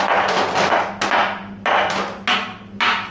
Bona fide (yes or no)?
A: yes